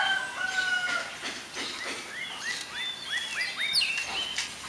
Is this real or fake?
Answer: real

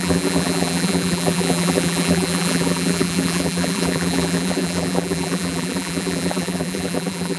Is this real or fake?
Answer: fake